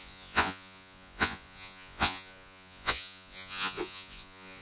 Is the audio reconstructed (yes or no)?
yes